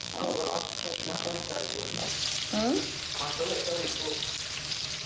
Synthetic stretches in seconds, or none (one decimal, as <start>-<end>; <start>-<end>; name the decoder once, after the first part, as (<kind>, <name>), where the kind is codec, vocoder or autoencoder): 0.0-2.0 (vocoder, BigVGAN v2)